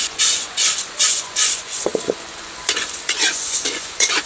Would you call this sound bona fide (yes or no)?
no